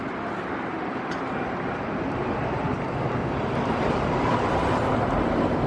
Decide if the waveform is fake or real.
fake